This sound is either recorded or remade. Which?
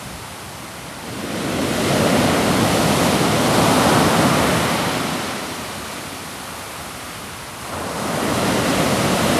recorded